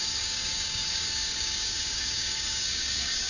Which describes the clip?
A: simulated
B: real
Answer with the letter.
A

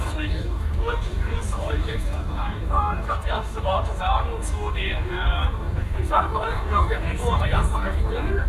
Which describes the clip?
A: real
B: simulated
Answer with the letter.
B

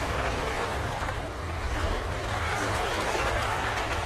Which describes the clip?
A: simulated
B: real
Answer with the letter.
A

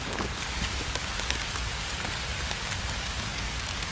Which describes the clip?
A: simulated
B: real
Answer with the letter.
A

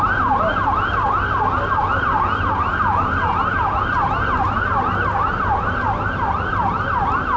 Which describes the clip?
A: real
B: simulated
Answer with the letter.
A